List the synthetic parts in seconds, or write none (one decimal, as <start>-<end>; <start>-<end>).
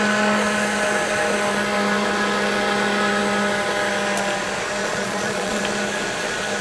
4.8-5.6